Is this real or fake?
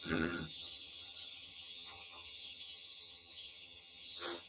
fake